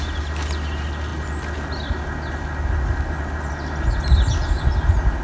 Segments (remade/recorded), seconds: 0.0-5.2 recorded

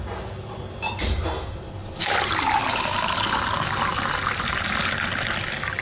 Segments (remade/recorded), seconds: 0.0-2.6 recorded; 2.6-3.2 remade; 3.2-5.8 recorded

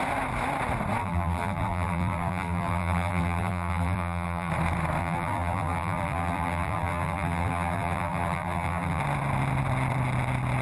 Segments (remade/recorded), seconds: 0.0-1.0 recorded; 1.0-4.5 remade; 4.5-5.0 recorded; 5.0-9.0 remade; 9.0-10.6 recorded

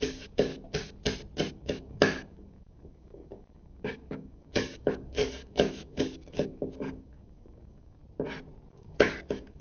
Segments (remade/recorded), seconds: 0.0-0.5 remade; 0.5-1.5 recorded; 1.5-8.0 remade; 8.0-8.7 recorded; 8.7-9.6 remade

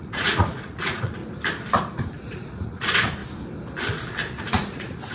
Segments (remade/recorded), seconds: 0.0-1.2 remade; 1.2-2.2 recorded; 2.2-3.2 remade; 3.2-4.4 recorded; 4.4-5.1 remade